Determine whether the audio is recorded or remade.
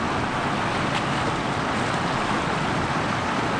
recorded